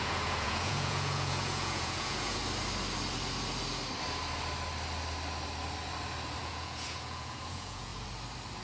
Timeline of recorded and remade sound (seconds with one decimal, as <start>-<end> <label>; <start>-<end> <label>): 0.0-2.4 remade; 2.4-6.4 recorded; 6.4-7.9 remade; 7.9-8.6 recorded